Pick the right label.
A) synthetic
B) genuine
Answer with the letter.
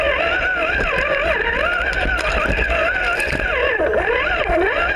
B